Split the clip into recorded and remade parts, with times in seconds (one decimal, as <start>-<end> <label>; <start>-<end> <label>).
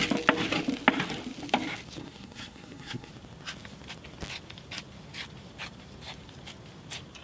0.0-2.0 recorded; 2.0-3.1 remade; 3.1-7.2 recorded